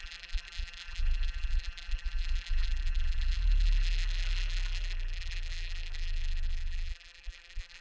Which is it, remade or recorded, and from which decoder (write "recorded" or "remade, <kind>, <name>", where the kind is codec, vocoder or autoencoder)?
remade, vocoder, BigVGAN v2